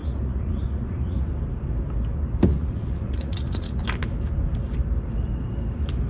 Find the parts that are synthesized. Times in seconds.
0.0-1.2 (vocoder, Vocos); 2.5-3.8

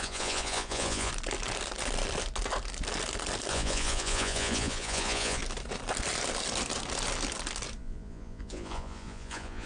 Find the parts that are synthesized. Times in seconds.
0.0-1.1 (vocoder, Vocos); 3.5-5.4; 7.8-9.7